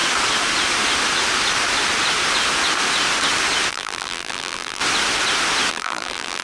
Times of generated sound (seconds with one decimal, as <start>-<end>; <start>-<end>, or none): 3.7-4.8; 5.7-6.4